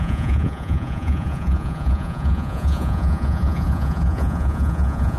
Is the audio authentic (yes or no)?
no